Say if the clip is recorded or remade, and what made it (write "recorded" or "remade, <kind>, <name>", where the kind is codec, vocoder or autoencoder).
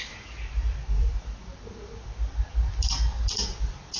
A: remade, vocoder, BigVGAN v2